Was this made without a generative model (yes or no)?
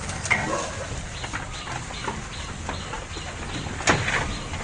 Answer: yes